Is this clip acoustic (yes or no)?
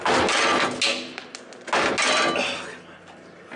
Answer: yes